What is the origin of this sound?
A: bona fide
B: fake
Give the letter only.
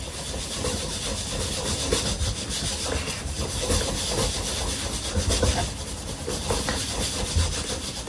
A